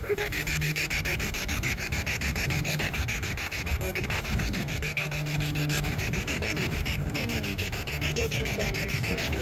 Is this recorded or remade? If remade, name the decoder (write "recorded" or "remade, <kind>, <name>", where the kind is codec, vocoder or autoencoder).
remade, codec, DAC